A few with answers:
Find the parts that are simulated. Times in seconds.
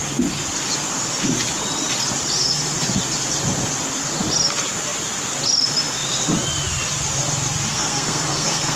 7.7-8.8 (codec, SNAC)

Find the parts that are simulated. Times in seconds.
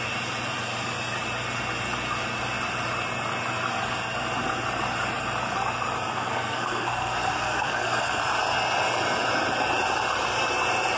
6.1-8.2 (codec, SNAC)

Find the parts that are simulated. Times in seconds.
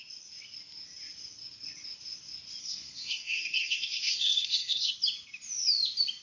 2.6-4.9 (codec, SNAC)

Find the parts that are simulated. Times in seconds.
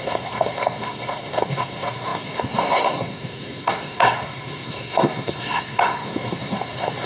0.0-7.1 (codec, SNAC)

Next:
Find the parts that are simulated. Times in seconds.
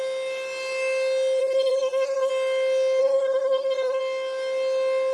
1.4-2.3 (codec, SNAC); 3.0-4.0